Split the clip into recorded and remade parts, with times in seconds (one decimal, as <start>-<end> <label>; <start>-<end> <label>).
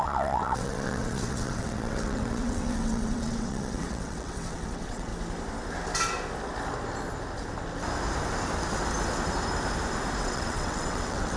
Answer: 0.0-5.1 remade; 5.1-10.2 recorded; 10.2-11.4 remade